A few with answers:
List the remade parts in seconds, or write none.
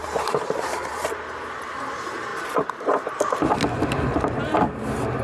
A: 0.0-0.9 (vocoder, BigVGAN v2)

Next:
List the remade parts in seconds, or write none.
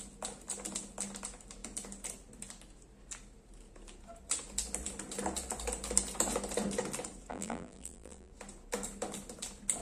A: 7.3-8.3 (vocoder, BigVGAN v2)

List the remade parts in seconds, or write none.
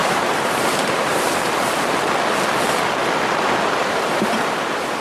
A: 0.0-1.3 (vocoder, BigVGAN v2); 3.8-5.0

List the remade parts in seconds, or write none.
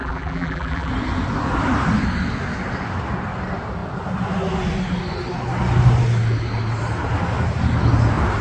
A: 0.0-0.9 (vocoder, BigVGAN v2)